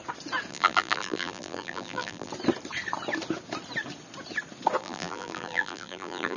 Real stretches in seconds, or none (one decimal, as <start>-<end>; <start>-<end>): 0.0-0.5; 2.3-4.8